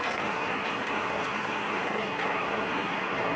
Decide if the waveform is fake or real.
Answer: fake